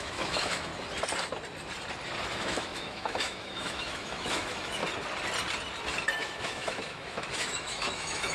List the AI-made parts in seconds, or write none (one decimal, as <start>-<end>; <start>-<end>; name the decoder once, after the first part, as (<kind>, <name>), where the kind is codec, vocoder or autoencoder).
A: 0.0-0.7 (autoencoder, DAC-VAE); 2.3-4.8; 6.2-8.3